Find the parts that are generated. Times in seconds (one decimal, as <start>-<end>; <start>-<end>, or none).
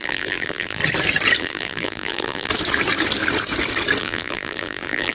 0.0-0.8; 1.4-2.5; 4.0-5.1